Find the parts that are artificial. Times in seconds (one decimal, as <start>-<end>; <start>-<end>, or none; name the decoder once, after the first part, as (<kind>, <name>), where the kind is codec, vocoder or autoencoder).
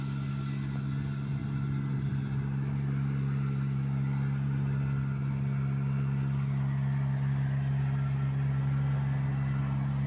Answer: none